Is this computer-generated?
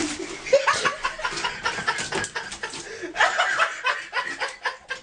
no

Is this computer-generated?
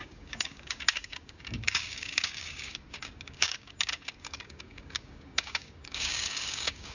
yes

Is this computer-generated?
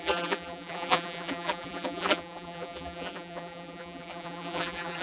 yes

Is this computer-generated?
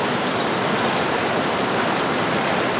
no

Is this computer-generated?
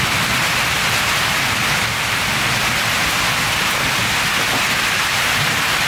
no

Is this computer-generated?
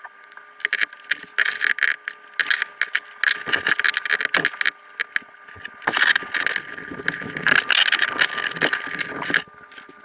no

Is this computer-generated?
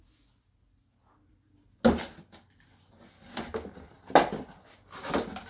no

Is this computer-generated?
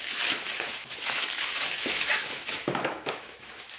yes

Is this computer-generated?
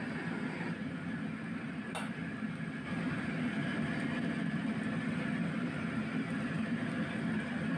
no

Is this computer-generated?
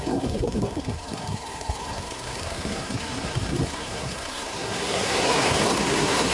yes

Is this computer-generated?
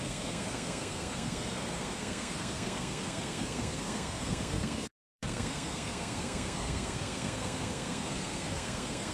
yes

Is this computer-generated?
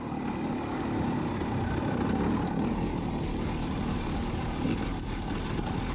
no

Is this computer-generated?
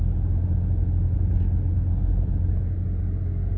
no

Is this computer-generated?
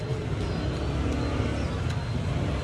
no